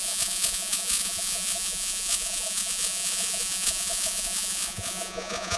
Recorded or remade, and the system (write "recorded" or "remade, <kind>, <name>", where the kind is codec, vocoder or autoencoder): remade, vocoder, Vocos